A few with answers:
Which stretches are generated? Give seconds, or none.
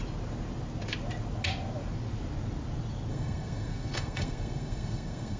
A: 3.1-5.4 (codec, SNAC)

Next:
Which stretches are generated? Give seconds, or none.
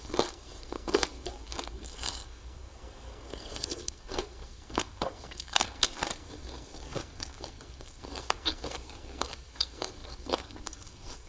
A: 0.0-11.3 (codec, SNAC)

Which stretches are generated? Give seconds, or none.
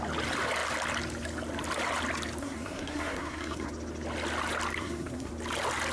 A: 2.4-3.7 (codec, SNAC); 4.8-5.3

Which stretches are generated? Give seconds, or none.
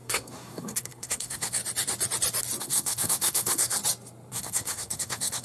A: 0.0-1.6 (codec, SNAC); 2.6-3.8; 4.3-5.4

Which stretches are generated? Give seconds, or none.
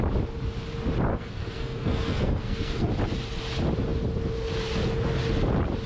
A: 1.1-2.9 (codec, SNAC)